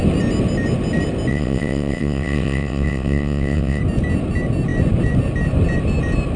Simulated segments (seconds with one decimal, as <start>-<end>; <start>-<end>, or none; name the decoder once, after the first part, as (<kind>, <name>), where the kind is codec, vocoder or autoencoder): 1.3-3.8 (vocoder, WaveNeXt)